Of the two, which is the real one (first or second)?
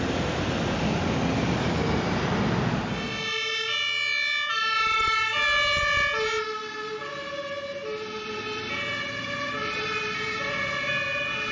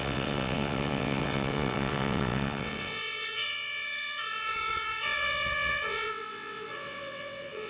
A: first